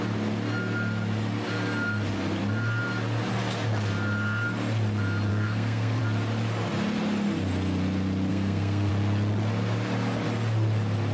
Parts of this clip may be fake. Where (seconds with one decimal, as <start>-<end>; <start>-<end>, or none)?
5.3-6.0; 8.3-8.9